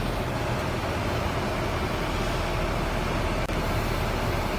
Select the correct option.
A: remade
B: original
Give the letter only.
B